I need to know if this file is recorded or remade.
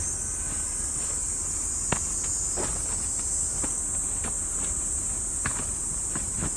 recorded